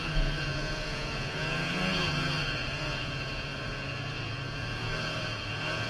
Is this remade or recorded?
remade